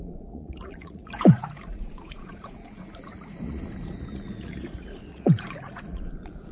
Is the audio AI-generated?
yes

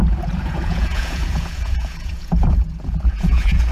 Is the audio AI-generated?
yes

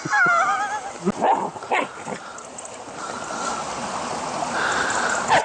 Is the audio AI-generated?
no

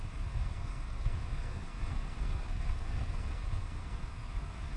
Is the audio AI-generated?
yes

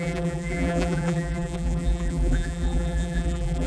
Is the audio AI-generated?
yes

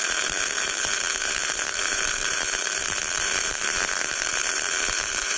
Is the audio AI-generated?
yes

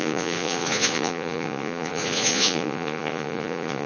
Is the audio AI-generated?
yes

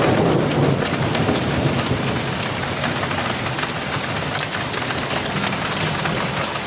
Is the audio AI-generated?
no